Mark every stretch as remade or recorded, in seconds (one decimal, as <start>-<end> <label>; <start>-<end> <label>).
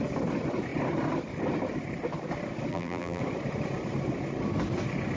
0.0-2.7 recorded; 2.7-3.2 remade; 3.2-5.2 recorded